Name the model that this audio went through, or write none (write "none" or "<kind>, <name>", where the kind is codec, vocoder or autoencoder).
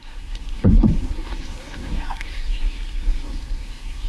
codec, SNAC